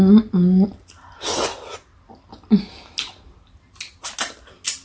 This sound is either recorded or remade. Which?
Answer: recorded